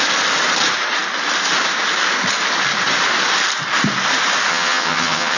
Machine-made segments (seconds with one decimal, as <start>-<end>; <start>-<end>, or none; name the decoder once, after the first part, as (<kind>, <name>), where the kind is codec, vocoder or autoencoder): 4.5-5.4 (vocoder, HiFi-GAN)